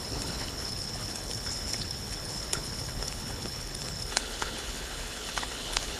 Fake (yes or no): yes